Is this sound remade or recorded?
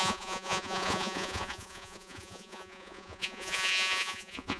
remade